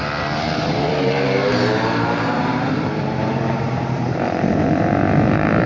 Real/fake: fake